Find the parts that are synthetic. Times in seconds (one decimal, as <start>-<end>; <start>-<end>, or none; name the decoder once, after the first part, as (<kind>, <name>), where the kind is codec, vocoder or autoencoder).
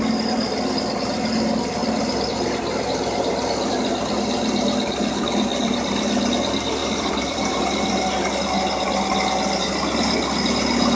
1.8-6.2 (vocoder, BigVGAN v2); 6.8-7.6